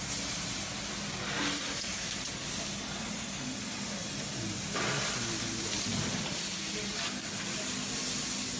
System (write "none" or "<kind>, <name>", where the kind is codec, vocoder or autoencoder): none